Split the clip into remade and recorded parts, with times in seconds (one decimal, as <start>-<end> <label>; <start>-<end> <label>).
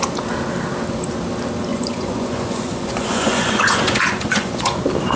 0.0-1.7 recorded; 1.7-4.8 remade; 4.8-5.2 recorded